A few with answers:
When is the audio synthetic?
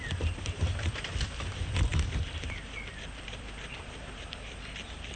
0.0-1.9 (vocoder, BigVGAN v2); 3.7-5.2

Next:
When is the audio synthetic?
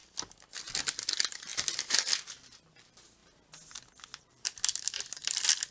1.1-1.5 (vocoder, BigVGAN v2); 2.2-3.2; 4.2-5.7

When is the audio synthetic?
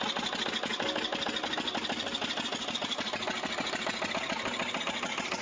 1.1-4.2 (vocoder, BigVGAN v2)